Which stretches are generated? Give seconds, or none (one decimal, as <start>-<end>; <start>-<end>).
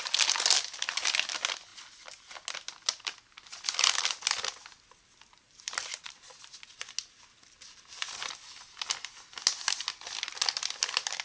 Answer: 4.6-6.0